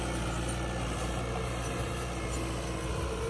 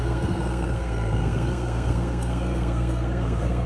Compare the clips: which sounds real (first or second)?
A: first